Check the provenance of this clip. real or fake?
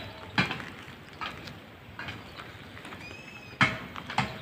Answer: real